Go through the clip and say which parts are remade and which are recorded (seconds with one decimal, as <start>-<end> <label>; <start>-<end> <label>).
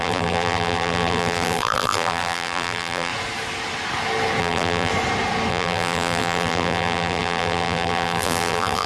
0.0-3.1 remade; 3.1-4.4 recorded; 4.4-4.9 remade; 4.9-5.5 recorded; 5.5-8.9 remade